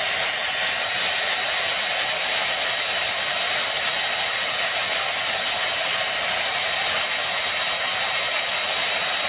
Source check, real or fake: real